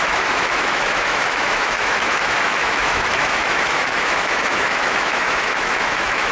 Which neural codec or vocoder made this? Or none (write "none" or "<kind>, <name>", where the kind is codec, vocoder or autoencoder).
autoencoder, DAC-VAE